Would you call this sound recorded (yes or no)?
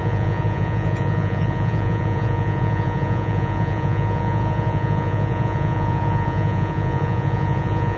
no